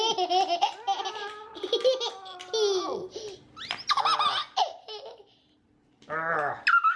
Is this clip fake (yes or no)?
no